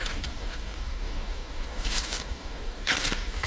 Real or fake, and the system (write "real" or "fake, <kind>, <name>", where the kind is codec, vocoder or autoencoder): fake, codec, DAC